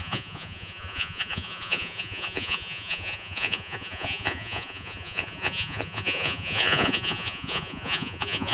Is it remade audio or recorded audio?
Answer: remade